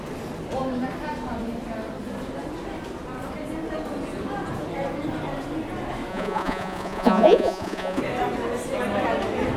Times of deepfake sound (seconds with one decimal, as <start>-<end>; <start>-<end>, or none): 6.1-8.0

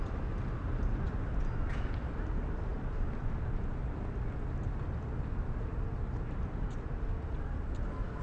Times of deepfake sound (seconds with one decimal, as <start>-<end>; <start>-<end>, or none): none